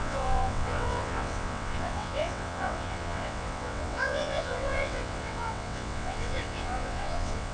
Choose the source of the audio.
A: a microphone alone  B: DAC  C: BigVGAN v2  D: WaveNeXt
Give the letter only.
D